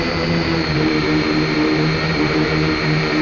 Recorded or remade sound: remade